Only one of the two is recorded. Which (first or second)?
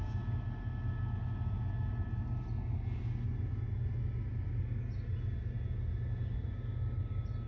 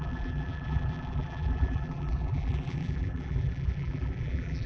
first